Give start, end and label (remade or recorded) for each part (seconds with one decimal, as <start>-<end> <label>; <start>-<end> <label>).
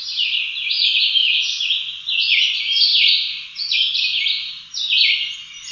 0.0-1.2 recorded; 1.2-2.5 remade; 2.5-5.7 recorded